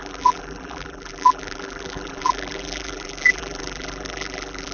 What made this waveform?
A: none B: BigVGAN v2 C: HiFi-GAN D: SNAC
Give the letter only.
B